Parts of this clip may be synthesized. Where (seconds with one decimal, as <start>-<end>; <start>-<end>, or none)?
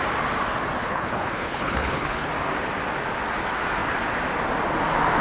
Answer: 0.8-2.3